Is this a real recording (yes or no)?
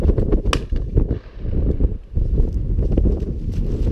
yes